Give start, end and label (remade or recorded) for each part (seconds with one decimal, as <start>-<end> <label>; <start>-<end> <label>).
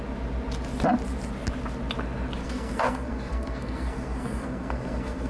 0.0-2.4 recorded; 2.4-5.3 remade